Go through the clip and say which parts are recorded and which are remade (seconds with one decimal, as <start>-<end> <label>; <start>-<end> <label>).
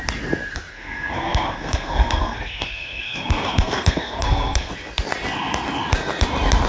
0.0-0.7 recorded; 0.7-4.7 remade; 4.7-6.7 recorded